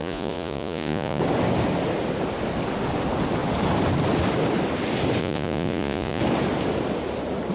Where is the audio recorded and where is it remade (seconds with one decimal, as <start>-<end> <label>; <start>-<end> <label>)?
0.0-1.2 remade; 1.2-5.2 recorded; 5.2-6.2 remade; 6.2-7.5 recorded